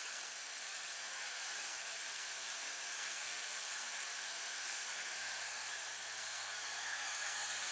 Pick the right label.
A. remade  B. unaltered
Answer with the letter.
A